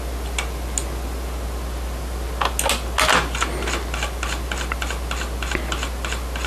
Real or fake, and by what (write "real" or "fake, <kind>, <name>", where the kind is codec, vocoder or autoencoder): real